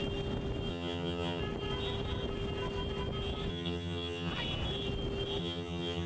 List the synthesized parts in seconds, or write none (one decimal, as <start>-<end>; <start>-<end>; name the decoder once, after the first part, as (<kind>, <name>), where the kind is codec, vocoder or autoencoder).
0.7-1.4 (vocoder, HiFi-GAN); 3.5-4.3; 5.4-6.1